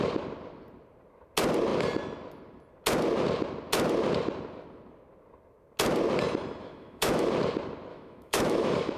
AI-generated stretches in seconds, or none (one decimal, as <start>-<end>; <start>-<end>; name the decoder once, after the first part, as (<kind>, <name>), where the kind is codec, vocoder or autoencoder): 6.6-7.3 (autoencoder, DAC-VAE); 7.9-9.0